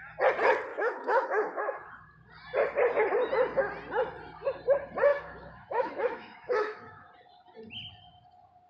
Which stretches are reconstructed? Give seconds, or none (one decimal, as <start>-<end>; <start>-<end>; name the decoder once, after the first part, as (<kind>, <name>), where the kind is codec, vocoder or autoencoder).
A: 0.7-1.9 (autoencoder, DAC-VAE); 5.1-7.1